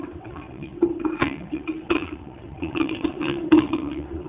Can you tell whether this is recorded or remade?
remade